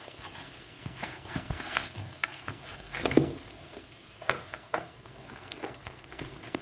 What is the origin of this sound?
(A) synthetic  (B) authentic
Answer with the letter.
A